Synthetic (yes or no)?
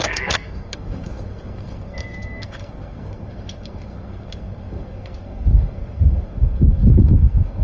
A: yes